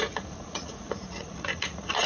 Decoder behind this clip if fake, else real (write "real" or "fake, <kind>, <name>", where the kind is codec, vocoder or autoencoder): fake, vocoder, Vocos